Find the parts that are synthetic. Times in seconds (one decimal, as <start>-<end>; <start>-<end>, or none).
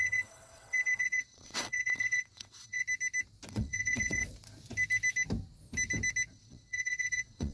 0.0-2.8; 3.5-4.2; 6.3-7.5